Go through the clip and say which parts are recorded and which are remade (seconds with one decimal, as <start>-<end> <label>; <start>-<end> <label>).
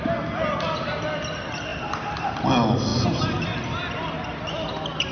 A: 0.0-1.7 recorded; 1.7-2.2 remade; 2.2-5.1 recorded